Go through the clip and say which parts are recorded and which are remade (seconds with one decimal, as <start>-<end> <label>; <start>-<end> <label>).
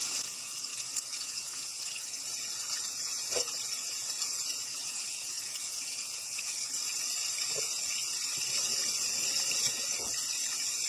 0.0-6.5 remade; 6.5-7.6 recorded; 7.6-8.0 remade; 8.0-9.6 recorded; 9.6-10.9 remade